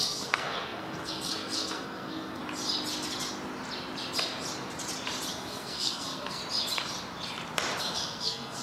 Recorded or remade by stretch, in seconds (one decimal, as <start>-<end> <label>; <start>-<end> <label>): 0.0-2.4 remade; 2.4-5.3 recorded; 5.3-6.4 remade; 6.4-7.8 recorded; 7.8-8.6 remade